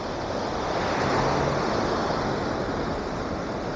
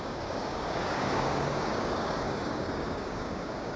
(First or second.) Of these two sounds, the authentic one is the first